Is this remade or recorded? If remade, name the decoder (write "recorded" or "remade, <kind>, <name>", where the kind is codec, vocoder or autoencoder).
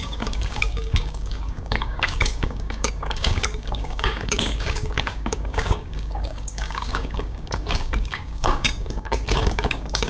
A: remade, codec, DAC